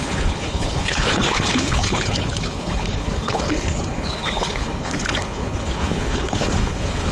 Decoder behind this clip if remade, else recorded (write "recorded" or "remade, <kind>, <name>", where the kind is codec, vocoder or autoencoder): remade, codec, HILCodec